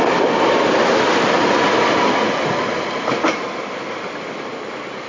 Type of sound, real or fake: real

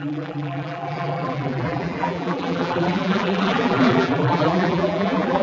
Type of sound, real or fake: fake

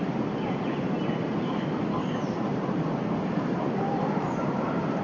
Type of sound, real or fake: fake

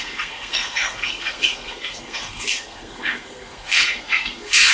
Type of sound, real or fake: fake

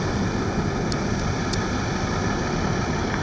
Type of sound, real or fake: real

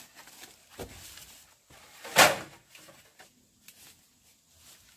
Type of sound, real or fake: real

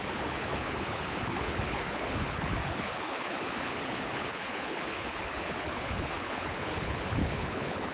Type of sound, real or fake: fake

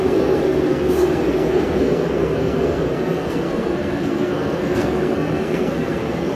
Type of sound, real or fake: fake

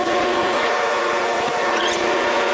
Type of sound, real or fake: fake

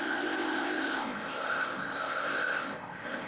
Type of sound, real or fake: fake